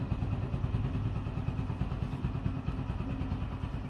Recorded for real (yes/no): yes